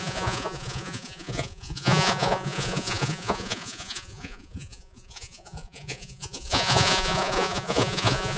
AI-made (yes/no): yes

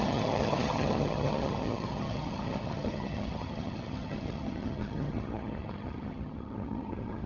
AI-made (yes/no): yes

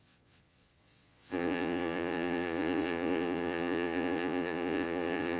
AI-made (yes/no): yes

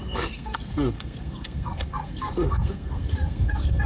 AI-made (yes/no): yes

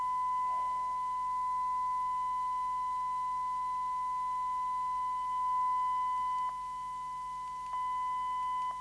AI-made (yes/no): no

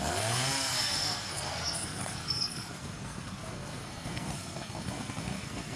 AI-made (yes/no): yes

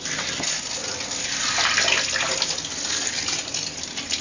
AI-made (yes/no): no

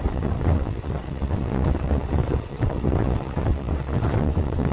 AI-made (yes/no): yes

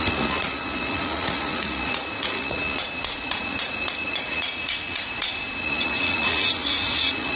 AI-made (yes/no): yes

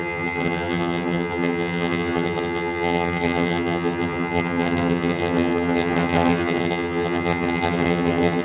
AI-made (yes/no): yes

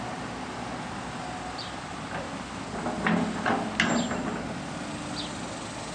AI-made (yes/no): no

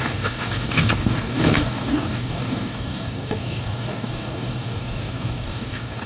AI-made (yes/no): yes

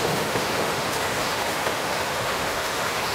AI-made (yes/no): yes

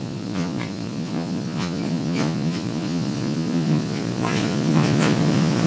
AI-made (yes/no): yes